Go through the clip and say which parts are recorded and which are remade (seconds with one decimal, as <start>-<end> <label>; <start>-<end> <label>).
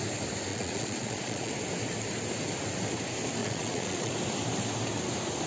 0.0-0.5 recorded; 0.5-1.5 remade; 1.5-3.4 recorded; 3.4-4.1 remade; 4.1-5.5 recorded